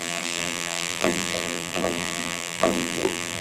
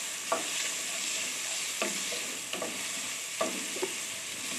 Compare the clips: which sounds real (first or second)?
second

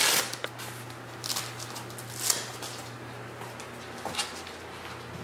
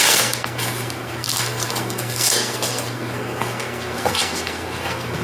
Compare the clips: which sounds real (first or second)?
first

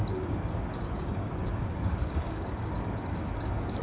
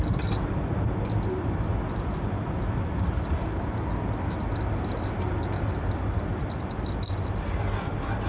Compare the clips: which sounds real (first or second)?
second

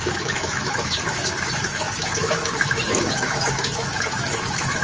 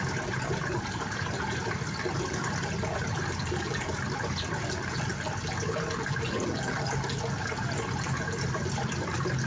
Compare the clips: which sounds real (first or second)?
second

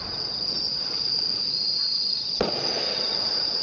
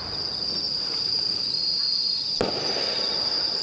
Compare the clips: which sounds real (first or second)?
second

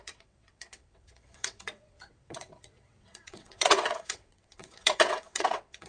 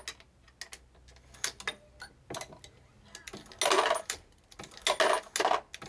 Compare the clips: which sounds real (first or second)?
second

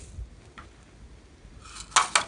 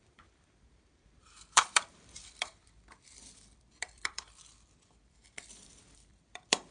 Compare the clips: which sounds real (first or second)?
first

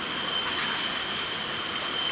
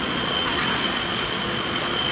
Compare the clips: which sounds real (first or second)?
first